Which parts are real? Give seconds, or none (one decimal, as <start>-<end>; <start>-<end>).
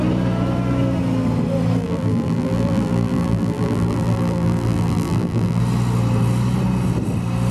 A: 0.0-1.8; 5.6-7.5